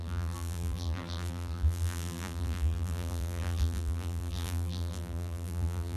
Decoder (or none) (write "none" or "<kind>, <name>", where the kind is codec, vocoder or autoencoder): vocoder, BigVGAN v2